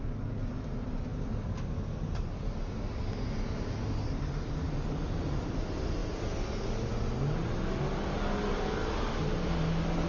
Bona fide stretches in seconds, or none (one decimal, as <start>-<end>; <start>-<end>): 0.0-10.1